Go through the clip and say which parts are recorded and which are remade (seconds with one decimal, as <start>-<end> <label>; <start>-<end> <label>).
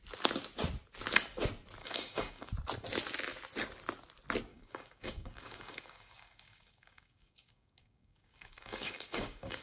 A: 0.0-1.8 recorded; 1.8-2.5 remade; 2.5-4.5 recorded; 4.5-9.6 remade